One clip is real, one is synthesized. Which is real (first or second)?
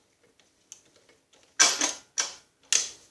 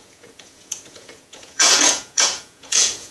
first